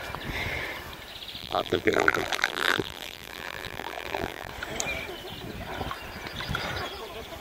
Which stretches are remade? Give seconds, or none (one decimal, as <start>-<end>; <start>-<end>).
1.4-4.5